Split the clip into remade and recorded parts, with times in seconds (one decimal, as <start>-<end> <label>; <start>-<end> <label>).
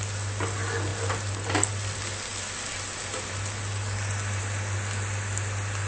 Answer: 0.0-5.9 recorded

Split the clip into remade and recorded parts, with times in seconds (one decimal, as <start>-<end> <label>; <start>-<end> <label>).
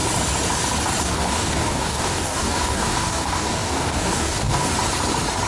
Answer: 0.0-1.0 recorded; 1.0-4.7 remade; 4.7-5.5 recorded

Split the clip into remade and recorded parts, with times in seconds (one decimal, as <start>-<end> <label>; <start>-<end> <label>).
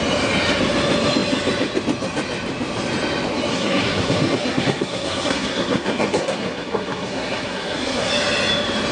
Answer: 0.0-3.5 recorded; 3.5-8.1 remade; 8.1-8.9 recorded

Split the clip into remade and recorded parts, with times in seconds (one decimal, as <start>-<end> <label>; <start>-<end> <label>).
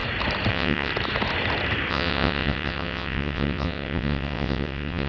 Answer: 0.0-0.5 recorded; 0.5-0.9 remade; 0.9-1.9 recorded; 1.9-5.1 remade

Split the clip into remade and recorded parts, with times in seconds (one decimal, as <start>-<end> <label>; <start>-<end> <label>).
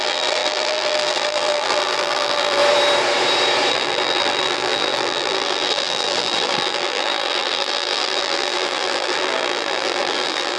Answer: 0.0-2.6 remade; 2.6-3.7 recorded; 3.7-10.6 remade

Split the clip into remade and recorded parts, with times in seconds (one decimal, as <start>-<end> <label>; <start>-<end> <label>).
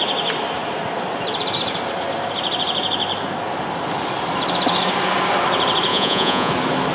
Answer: 0.0-5.9 recorded; 5.9-6.5 remade; 6.5-6.9 recorded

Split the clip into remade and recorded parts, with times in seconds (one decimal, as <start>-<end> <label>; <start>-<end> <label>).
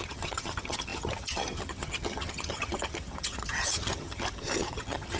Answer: 0.0-5.2 remade